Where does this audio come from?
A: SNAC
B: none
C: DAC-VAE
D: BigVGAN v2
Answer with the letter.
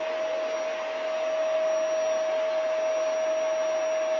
B